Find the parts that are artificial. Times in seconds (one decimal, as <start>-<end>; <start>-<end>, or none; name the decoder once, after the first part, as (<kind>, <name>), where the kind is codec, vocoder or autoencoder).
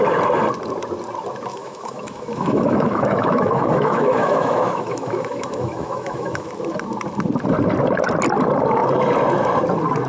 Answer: 1.5-6.5 (autoencoder, DAC-VAE)